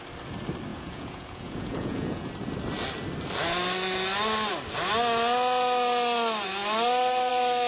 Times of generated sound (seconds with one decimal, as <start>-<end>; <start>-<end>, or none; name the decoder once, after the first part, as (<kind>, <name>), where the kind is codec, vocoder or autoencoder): 0.7-2.3 (vocoder, Vocos)